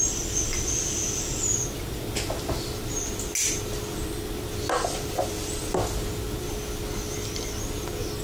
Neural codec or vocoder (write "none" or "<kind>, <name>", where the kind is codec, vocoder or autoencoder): none